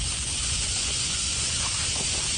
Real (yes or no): no